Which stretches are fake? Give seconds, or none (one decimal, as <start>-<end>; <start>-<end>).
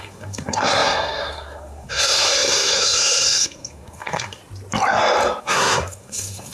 0.0-4.4; 5.4-6.5